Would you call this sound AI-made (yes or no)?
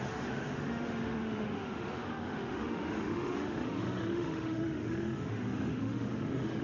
yes